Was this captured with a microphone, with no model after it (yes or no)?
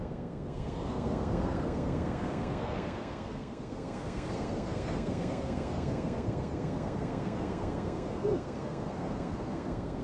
no